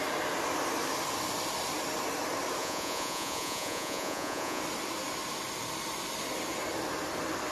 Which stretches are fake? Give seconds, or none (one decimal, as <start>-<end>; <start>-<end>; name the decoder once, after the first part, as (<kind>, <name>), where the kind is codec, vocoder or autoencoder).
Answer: 2.6-4.6 (vocoder, Vocos)